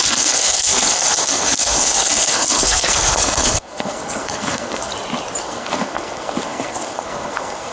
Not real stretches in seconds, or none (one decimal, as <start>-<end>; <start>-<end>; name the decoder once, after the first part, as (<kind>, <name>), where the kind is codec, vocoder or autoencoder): 0.0-4.9 (codec, SNAC); 5.4-7.7